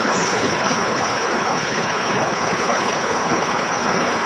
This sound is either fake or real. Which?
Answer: fake